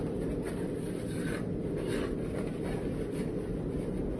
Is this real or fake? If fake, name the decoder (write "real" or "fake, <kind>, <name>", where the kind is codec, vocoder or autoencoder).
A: real